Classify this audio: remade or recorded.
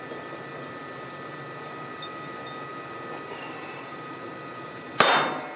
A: recorded